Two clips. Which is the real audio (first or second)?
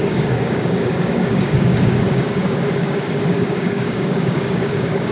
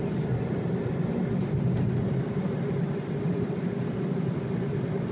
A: second